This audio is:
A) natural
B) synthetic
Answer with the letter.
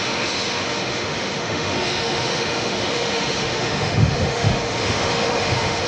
B